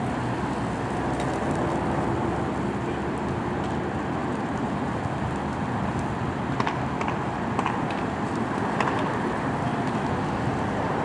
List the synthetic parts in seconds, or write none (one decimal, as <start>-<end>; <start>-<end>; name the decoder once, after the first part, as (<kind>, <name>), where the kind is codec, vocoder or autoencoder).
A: 4.2-5.0 (vocoder, BigVGAN v2)